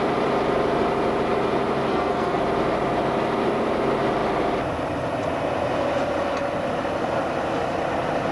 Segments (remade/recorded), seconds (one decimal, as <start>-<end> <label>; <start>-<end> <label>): 0.0-1.9 recorded; 1.9-2.4 remade; 2.4-8.3 recorded